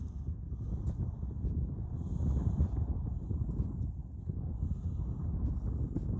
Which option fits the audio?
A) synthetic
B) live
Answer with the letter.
B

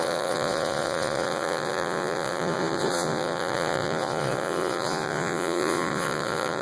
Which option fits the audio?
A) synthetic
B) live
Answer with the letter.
A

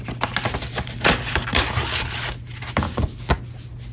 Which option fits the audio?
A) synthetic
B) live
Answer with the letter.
B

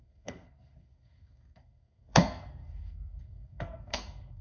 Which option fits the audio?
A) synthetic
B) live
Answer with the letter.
A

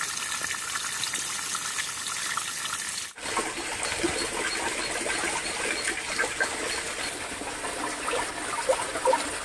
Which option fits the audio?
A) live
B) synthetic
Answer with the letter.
A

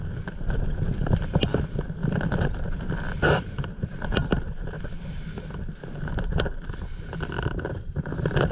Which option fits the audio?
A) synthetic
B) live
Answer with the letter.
A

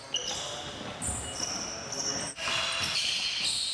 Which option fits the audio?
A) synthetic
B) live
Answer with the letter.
B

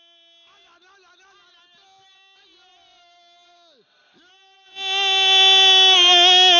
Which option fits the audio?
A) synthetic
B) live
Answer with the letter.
B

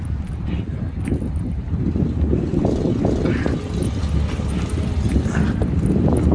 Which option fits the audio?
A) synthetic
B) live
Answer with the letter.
B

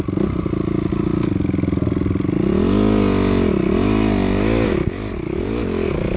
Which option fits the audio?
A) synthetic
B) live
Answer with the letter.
B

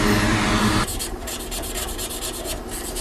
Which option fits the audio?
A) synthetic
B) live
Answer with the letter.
B